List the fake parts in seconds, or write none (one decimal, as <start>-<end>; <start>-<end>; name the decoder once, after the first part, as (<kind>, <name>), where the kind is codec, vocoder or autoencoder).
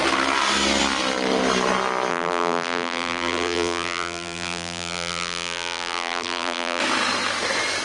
2.1-6.8 (vocoder, BigVGAN v2)